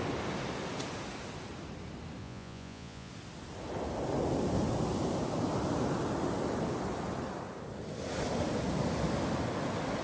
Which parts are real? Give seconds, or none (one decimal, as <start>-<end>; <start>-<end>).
0.0-2.2; 3.1-10.0